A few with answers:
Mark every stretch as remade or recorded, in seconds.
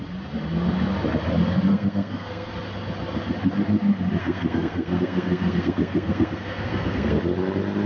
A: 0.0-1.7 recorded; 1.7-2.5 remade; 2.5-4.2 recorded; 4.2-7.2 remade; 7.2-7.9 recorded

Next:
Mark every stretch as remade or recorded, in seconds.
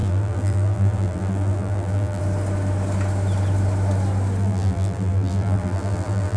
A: 0.0-2.2 remade; 2.2-4.4 recorded; 4.4-6.4 remade